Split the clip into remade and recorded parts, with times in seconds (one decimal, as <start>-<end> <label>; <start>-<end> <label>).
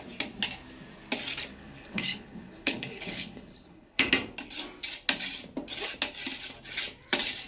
0.0-1.5 recorded; 1.5-4.1 remade; 4.1-7.5 recorded